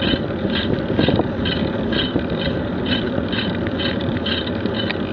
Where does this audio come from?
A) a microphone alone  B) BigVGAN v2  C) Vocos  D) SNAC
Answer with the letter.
A